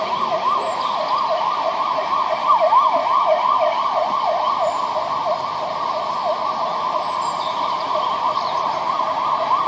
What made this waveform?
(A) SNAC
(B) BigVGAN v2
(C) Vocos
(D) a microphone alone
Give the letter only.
D